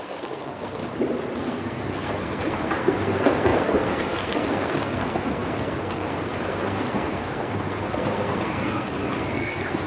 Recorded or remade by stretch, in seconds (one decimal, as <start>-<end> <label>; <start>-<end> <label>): 0.0-0.8 remade; 0.8-1.4 recorded; 1.4-9.9 remade